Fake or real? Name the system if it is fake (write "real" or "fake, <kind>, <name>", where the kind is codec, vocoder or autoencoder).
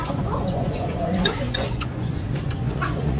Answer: fake, vocoder, Vocos